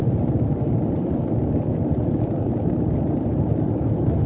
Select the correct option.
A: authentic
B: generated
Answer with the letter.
A